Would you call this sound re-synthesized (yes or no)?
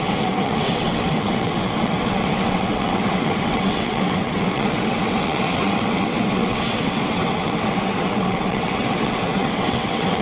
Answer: yes